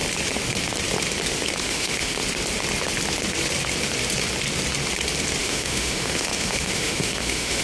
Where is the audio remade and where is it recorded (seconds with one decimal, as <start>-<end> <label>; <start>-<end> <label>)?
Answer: 0.0-1.6 recorded; 1.6-2.2 remade; 2.2-5.4 recorded; 5.4-7.6 remade